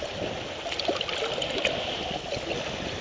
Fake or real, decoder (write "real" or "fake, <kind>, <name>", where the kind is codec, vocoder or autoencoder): real